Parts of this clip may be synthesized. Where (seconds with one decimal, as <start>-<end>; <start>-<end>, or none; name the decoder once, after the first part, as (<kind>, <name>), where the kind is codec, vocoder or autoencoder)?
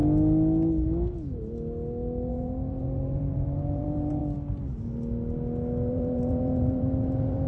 2.3-4.2 (vocoder, BigVGAN v2); 5.9-7.5